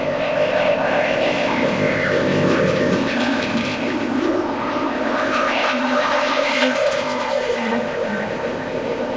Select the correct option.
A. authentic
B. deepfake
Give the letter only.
B